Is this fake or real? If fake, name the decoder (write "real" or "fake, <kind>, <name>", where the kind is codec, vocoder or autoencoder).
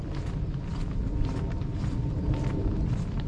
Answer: real